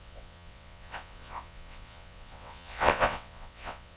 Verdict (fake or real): fake